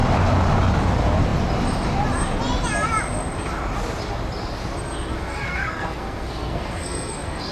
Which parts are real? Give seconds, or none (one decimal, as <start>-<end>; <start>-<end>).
0.0-5.1